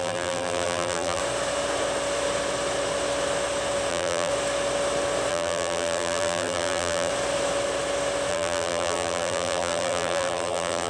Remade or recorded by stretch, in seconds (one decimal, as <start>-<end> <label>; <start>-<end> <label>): 0.0-1.2 remade; 1.2-3.9 recorded; 3.9-4.3 remade; 4.3-5.3 recorded; 5.3-7.1 remade; 7.1-8.3 recorded; 8.3-10.9 remade